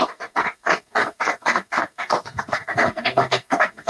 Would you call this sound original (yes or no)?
no